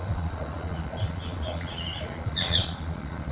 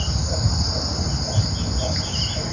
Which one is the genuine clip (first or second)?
second